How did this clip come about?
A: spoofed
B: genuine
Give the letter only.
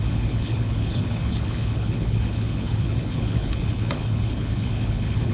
A